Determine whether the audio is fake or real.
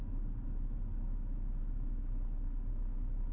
real